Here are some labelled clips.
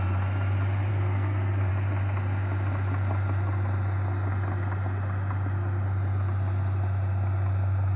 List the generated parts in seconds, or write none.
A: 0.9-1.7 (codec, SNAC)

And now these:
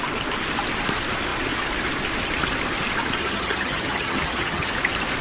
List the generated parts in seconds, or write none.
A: 3.2-4.7 (vocoder, HiFi-GAN)

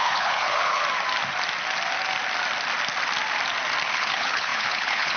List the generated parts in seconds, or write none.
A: 0.0-0.8 (codec, HILCodec); 3.9-5.2

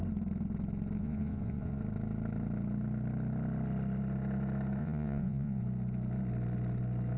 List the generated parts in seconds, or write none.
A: 1.0-1.8 (vocoder, Vocos); 4.8-5.6

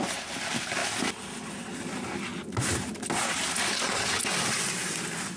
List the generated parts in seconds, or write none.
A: none

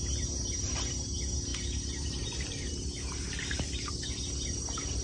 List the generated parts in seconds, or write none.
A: none

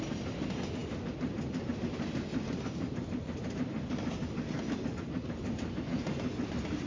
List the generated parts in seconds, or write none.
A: 0.8-1.7 (vocoder, BigVGAN v2); 2.3-4.9